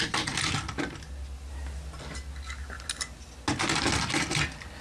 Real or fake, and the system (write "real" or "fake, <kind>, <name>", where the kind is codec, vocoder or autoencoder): real